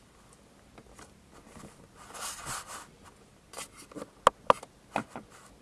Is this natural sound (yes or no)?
yes